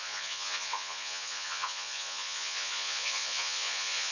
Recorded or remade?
remade